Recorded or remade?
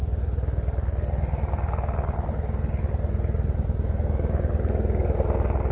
recorded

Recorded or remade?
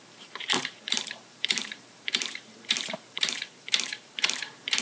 remade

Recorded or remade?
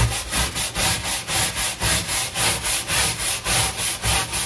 recorded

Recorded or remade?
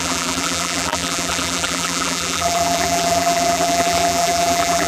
remade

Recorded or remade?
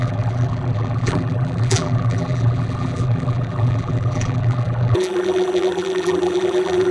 remade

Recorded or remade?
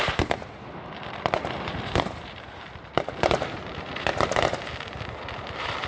remade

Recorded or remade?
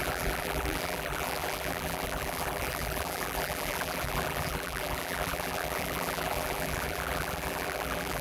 remade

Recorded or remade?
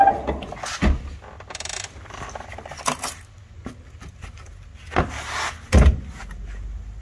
recorded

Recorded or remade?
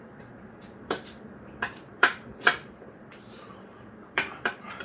remade